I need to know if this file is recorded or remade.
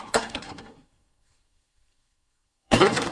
remade